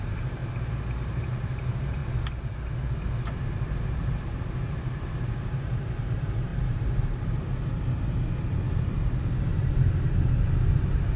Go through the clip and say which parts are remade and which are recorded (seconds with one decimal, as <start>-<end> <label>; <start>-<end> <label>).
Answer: 0.0-0.4 remade; 0.4-1.1 recorded; 1.1-2.0 remade; 2.0-4.8 recorded; 4.8-6.5 remade; 6.5-11.2 recorded